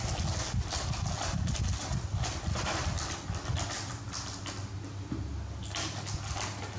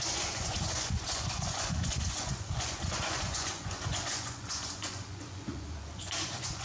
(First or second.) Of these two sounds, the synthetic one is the second